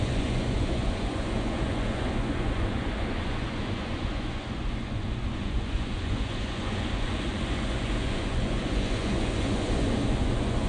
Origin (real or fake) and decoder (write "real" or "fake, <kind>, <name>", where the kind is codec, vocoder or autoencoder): fake, vocoder, Vocos